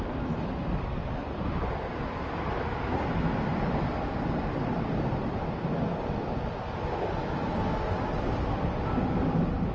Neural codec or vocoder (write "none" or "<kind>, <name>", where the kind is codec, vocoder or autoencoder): none